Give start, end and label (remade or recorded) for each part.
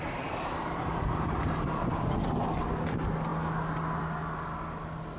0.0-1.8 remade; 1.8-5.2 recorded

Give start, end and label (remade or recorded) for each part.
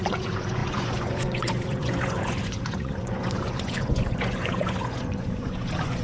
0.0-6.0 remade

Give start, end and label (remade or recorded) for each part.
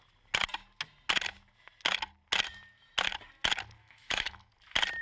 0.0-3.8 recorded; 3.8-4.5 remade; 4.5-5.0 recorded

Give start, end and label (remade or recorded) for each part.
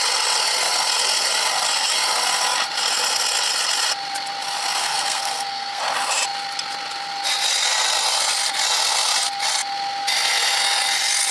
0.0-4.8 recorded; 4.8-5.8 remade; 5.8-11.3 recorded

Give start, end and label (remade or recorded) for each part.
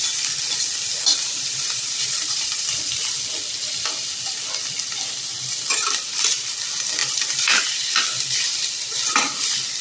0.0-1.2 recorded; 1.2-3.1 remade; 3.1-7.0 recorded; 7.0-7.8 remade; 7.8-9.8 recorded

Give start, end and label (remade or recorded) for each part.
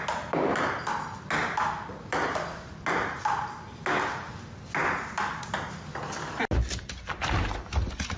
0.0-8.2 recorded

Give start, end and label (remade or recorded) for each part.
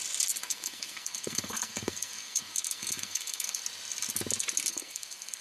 0.0-0.4 recorded; 0.4-3.6 remade; 3.6-4.7 recorded; 4.7-5.4 remade